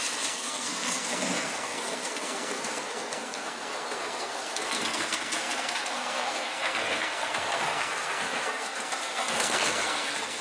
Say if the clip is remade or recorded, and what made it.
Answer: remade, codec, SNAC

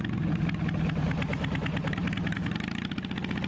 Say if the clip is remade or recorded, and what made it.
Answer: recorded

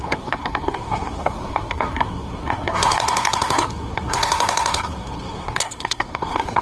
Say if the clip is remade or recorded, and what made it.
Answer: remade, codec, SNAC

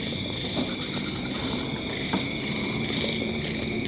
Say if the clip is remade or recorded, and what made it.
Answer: remade, vocoder, BigVGAN v2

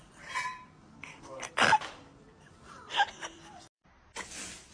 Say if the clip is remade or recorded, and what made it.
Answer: remade, vocoder, BigVGAN v2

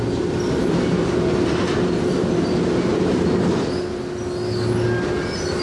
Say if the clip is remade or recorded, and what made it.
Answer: recorded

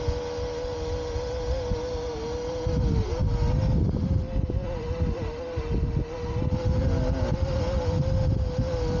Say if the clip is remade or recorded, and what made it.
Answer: recorded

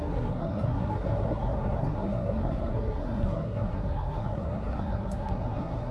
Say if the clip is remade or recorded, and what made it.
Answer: remade, codec, SNAC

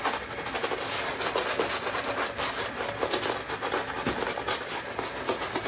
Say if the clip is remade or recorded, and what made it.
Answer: recorded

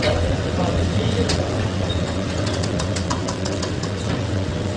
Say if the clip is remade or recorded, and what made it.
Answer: remade, vocoder, WaveNeXt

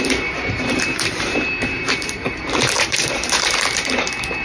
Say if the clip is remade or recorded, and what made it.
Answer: remade, vocoder, BigVGAN v2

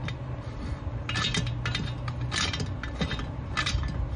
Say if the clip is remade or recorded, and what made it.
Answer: recorded